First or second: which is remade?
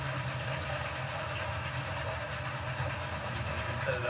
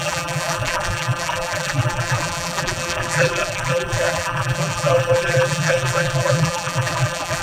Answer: second